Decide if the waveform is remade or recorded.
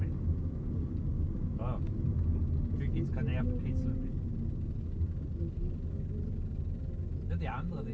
recorded